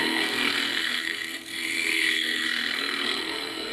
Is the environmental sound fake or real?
fake